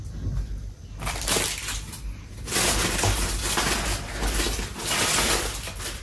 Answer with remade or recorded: recorded